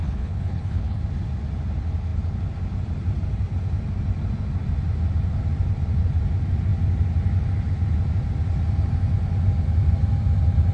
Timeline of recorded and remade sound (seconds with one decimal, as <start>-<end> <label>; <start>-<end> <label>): 0.0-1.0 remade; 1.0-10.7 recorded